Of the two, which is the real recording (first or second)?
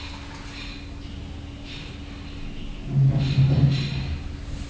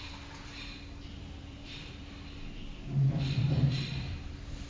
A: first